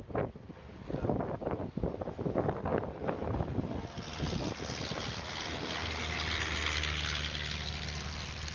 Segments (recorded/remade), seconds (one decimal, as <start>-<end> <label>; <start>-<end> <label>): 0.0-8.5 recorded